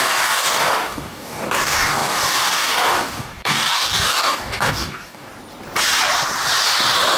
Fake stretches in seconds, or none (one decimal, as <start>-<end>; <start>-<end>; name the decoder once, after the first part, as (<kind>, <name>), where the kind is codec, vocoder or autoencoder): 0.0-5.3 (codec, DAC)